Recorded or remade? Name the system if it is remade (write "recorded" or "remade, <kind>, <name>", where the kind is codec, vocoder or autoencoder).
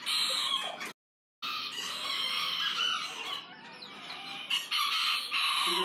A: recorded